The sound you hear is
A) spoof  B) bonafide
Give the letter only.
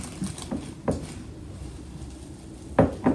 B